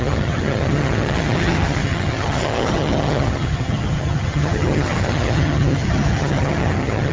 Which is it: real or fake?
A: fake